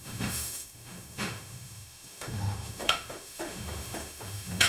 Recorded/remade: remade